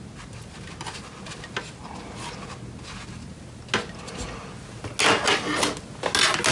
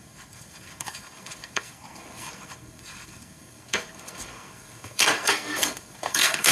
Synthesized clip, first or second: second